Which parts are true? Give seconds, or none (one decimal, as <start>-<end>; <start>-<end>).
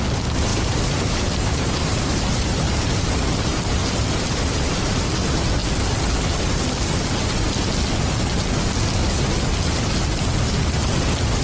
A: 0.0-0.5; 3.0-3.8; 5.1-11.4